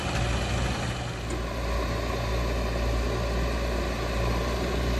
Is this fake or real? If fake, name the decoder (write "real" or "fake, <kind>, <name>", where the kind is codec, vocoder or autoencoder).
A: real